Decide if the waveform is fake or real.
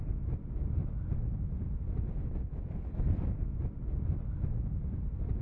real